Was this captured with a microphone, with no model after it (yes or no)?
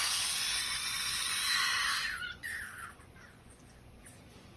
no